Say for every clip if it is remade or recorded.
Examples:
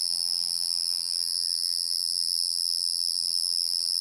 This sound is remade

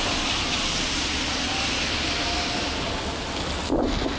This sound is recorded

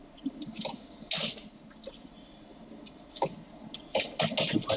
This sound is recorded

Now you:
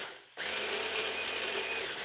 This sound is recorded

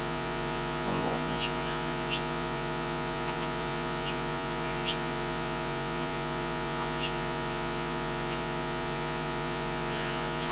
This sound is remade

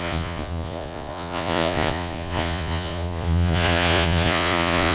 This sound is remade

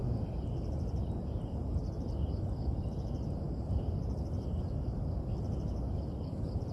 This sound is recorded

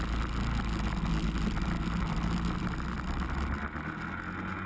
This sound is recorded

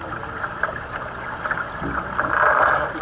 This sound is recorded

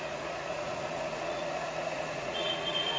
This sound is remade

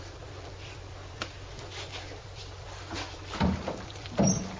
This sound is recorded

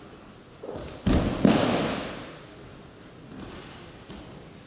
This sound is recorded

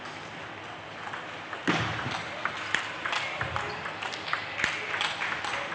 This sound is recorded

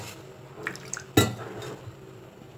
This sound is recorded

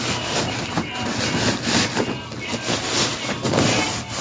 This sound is recorded